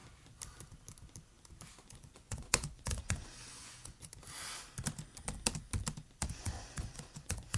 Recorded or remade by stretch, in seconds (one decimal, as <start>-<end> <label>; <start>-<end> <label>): 0.0-1.9 recorded; 1.9-4.1 remade; 4.1-6.2 recorded; 6.2-7.6 remade